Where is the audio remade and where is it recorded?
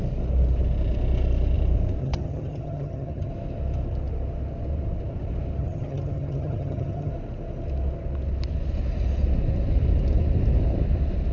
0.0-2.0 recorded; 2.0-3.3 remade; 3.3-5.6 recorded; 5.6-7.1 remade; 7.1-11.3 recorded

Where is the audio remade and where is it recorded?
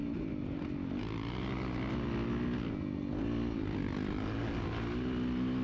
0.0-5.6 recorded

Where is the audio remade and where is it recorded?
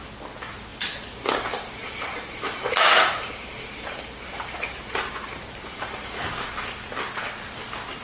0.0-1.8 recorded; 1.8-6.3 remade; 6.3-8.0 recorded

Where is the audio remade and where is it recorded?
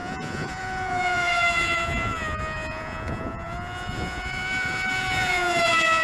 0.0-6.0 remade